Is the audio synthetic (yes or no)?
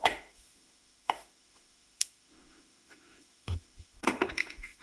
yes